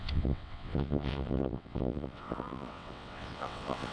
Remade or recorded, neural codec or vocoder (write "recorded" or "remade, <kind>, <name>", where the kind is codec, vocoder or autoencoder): remade, vocoder, WaveNeXt